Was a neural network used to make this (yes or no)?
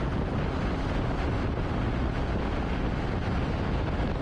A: no